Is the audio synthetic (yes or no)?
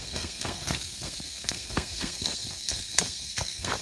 yes